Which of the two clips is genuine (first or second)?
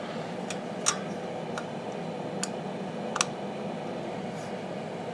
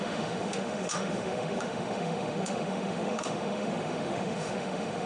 first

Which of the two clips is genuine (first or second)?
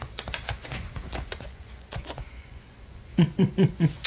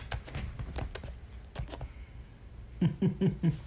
second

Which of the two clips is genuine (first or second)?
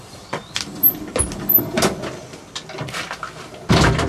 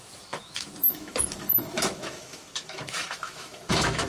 first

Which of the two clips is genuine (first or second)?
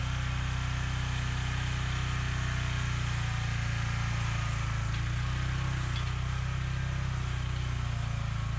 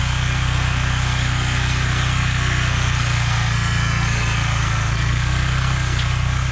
first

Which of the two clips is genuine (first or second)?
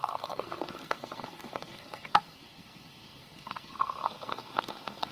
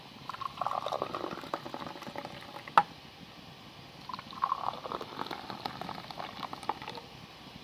second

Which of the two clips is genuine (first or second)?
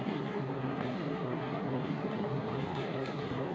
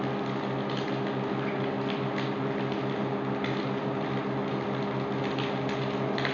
second